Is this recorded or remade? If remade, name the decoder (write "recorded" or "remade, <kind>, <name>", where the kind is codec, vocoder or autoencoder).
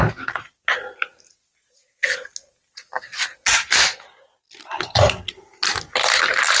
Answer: recorded